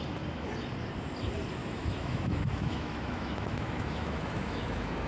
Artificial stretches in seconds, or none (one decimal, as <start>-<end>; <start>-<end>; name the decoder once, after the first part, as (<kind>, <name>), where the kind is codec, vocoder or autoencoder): 1.6-5.1 (autoencoder, DAC-VAE)